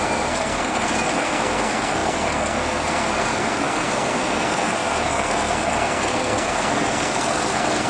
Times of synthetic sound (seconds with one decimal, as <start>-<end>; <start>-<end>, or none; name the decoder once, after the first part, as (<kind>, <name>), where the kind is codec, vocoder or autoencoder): 0.0-7.9 (codec, SNAC)